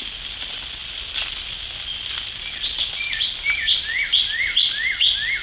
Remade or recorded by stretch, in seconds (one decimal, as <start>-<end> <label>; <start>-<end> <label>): 0.0-5.4 recorded